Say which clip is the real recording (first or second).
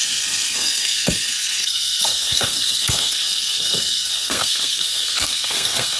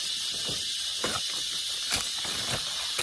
second